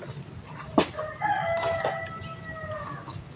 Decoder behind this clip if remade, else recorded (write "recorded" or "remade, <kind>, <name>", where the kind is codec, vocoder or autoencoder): recorded